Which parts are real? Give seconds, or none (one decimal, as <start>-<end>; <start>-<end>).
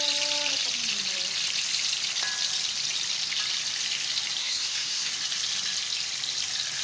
0.0-4.4; 5.1-6.8